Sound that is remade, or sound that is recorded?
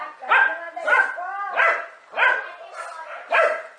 recorded